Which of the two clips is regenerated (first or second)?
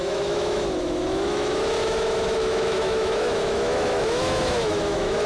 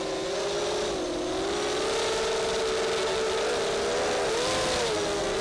first